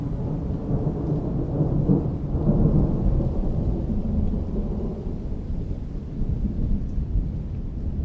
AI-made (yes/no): no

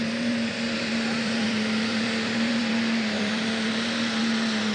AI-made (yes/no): yes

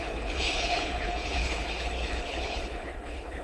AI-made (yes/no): yes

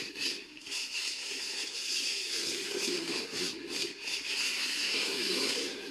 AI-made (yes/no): yes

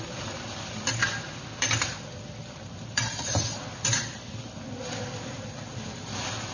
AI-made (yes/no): no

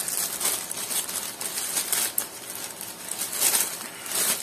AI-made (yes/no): no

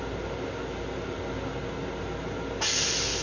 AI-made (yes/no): no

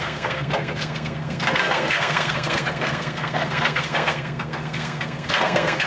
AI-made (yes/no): yes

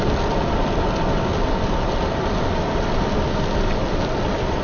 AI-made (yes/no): no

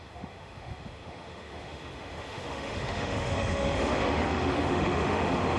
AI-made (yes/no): yes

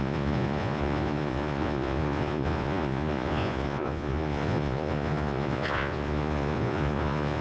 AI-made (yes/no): yes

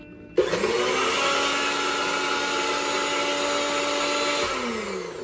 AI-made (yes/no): no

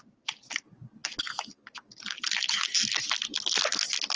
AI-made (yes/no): no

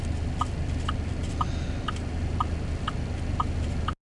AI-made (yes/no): no